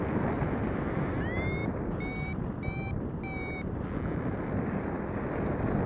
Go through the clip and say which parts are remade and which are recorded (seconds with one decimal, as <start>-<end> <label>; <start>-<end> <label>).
0.0-5.9 recorded